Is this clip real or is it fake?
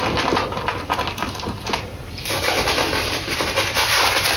fake